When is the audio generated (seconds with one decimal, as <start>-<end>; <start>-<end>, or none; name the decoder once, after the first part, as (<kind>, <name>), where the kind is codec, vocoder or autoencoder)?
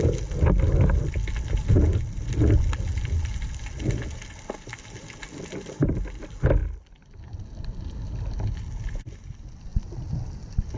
none